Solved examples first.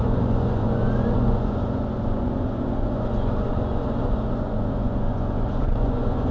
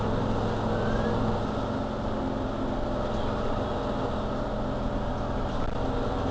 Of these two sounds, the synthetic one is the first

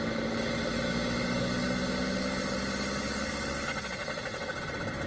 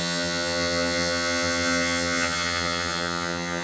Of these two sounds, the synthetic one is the second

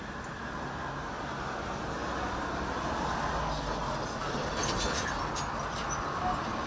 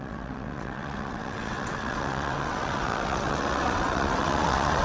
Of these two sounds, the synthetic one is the second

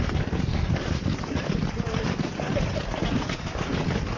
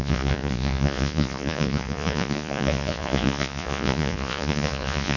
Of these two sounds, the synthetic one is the second